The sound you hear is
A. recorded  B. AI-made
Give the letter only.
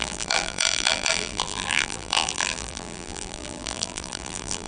B